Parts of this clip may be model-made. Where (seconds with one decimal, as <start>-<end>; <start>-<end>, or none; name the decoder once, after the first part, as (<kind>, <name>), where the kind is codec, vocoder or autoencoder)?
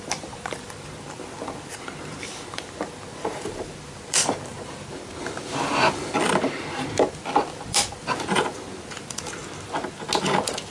0.0-9.4 (vocoder, BigVGAN v2)